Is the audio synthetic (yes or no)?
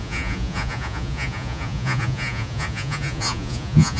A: yes